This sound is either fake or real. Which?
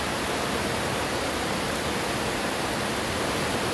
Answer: real